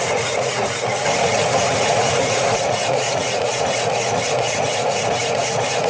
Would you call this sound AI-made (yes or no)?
yes